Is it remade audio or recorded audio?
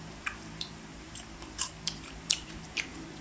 remade